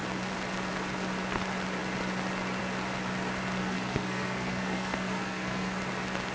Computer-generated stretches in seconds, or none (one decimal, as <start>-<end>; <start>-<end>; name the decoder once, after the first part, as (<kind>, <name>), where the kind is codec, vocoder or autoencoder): 3.6-5.8 (codec, SNAC)